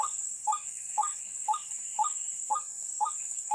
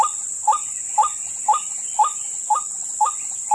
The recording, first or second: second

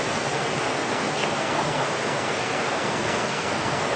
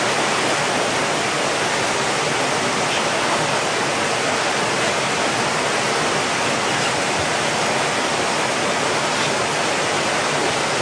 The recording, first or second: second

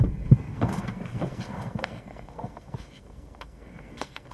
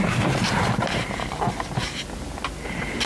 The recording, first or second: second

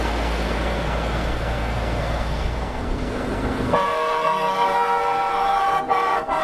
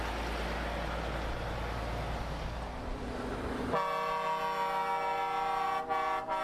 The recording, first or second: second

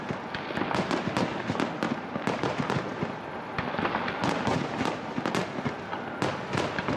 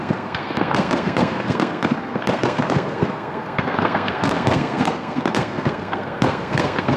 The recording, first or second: first